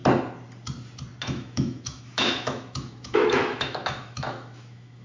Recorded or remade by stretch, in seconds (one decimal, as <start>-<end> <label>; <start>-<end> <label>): 0.0-1.2 recorded; 1.2-5.0 remade